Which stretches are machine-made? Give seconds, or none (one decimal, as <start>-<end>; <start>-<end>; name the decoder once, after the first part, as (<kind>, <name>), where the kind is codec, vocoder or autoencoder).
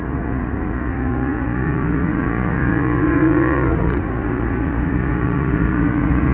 0.0-6.3 (vocoder, Vocos)